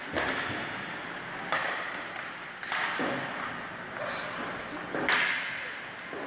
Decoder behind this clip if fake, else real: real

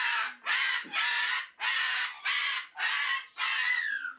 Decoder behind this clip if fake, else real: real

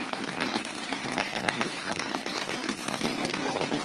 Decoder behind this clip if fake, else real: fake, codec, SNAC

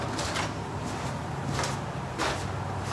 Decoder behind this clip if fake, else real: real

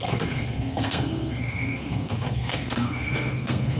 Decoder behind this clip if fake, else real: fake, codec, SNAC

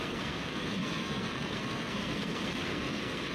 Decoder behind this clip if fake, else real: fake, codec, SNAC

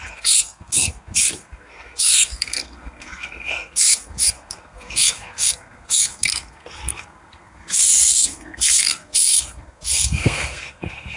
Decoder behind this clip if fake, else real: fake, codec, SNAC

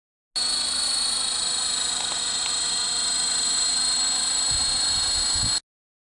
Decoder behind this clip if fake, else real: real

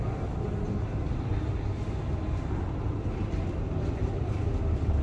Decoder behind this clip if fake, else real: real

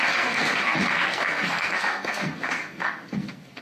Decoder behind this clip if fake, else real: fake, codec, SNAC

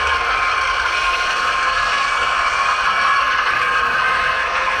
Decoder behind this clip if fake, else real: fake, codec, SNAC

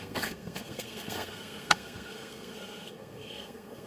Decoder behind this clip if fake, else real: fake, codec, SNAC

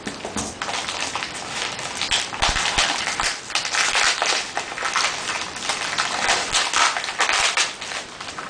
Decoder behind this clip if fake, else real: real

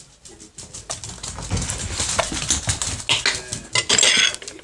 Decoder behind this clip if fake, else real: real